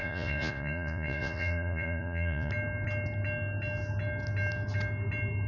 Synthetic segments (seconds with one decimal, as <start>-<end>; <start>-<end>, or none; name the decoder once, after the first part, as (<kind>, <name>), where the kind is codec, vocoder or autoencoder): 0.0-2.5 (vocoder, Vocos)